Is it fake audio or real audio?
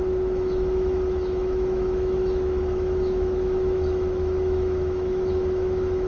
fake